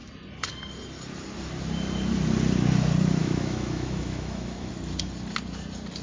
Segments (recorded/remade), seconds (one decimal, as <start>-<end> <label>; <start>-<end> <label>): 0.0-3.2 recorded; 3.2-4.7 remade; 4.7-6.0 recorded

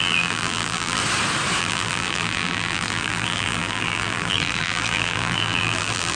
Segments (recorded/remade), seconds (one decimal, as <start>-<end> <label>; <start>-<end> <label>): 0.0-1.0 remade; 1.0-1.6 recorded; 1.6-6.2 remade

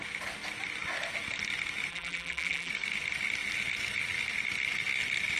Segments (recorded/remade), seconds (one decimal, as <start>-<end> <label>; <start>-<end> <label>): 0.0-1.9 recorded; 1.9-2.7 remade; 2.7-5.4 recorded